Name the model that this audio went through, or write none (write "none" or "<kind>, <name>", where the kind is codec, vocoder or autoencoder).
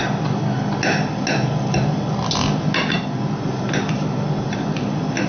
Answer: none